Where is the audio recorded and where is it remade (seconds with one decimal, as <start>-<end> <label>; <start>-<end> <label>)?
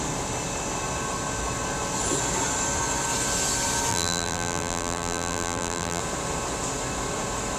0.0-3.9 recorded; 3.9-6.0 remade; 6.0-7.6 recorded